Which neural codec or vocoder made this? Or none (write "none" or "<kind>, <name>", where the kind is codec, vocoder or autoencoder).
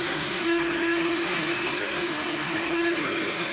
codec, SNAC